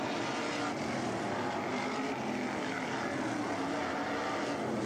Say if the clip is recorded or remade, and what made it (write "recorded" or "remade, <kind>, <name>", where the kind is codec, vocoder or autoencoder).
recorded